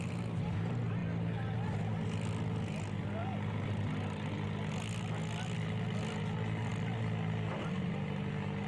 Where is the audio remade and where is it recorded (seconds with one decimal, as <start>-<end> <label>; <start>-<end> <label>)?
0.0-8.7 recorded